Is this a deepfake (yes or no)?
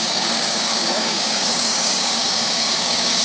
yes